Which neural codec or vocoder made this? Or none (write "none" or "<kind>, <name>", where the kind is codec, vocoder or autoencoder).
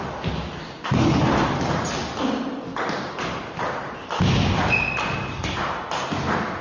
none